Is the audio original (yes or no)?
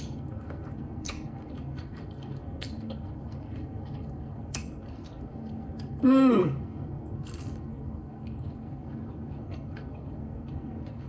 no